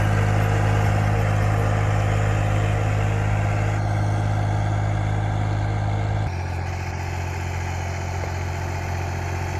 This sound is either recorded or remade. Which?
recorded